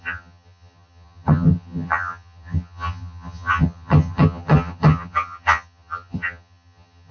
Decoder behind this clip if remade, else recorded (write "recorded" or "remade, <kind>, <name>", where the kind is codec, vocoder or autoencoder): remade, vocoder, HiFi-GAN